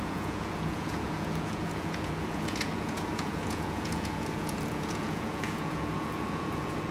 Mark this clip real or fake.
fake